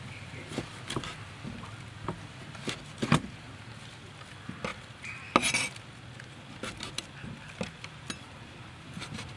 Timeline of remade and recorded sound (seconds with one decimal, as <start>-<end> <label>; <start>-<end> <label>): 0.0-9.4 recorded